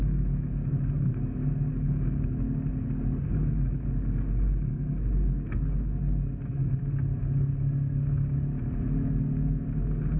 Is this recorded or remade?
recorded